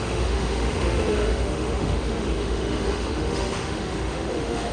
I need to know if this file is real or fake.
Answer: fake